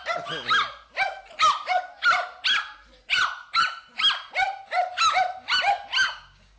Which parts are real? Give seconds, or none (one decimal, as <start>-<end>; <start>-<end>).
0.0-6.0